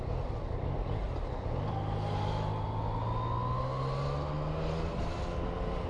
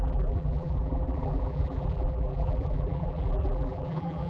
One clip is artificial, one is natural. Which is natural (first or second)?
first